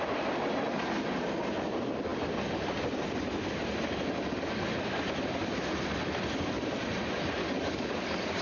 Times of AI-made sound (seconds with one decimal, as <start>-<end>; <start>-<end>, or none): 7.4-8.4